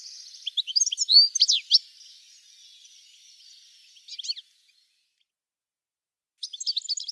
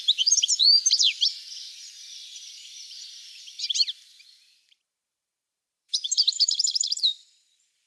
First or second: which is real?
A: first